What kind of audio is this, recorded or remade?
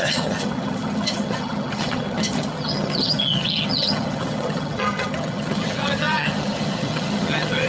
remade